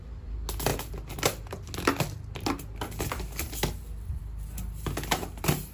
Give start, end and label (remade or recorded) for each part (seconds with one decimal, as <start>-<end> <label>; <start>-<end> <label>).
0.0-5.7 recorded